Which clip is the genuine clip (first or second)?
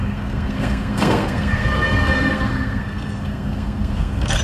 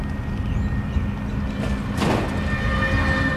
second